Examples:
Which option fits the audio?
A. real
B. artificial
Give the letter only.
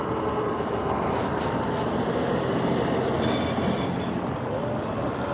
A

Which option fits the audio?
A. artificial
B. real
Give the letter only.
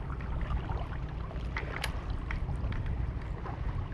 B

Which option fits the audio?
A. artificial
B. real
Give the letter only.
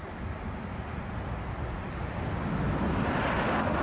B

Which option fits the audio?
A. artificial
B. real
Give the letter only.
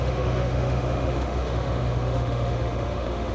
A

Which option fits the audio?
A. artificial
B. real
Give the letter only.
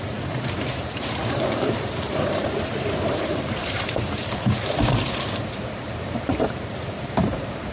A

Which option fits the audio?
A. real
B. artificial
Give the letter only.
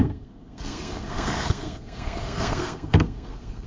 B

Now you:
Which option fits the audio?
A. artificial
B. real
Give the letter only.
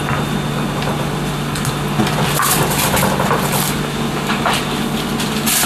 B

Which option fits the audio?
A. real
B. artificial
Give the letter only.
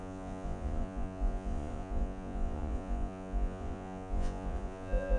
B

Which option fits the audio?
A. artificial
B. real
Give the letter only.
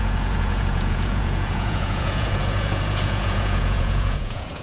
A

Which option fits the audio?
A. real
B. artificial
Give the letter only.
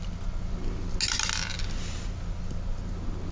A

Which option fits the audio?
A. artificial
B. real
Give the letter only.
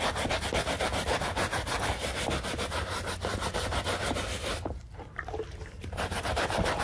A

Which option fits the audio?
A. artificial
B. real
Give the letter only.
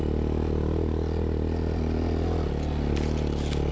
B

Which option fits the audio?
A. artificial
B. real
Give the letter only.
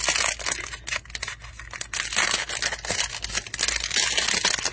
B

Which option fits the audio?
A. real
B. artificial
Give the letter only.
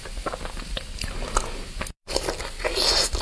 A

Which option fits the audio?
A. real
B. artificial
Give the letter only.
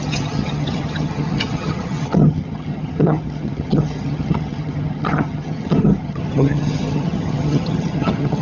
B